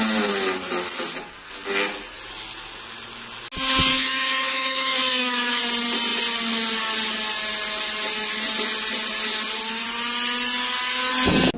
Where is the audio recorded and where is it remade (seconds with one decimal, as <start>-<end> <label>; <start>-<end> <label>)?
0.0-3.9 recorded; 3.9-5.6 remade; 5.6-11.6 recorded